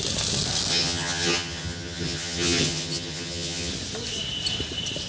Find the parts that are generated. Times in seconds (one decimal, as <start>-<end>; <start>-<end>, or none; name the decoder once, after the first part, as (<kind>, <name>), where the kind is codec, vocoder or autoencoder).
0.7-3.7 (vocoder, HiFi-GAN)